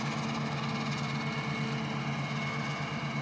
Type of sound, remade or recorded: recorded